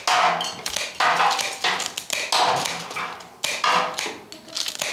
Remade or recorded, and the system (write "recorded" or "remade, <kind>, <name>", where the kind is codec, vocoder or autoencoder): recorded